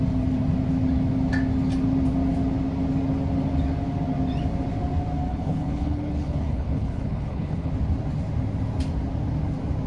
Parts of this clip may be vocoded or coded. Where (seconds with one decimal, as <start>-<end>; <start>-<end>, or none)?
5.3-7.7